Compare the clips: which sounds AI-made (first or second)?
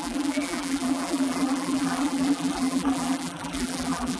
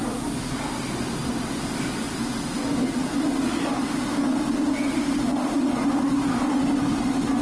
first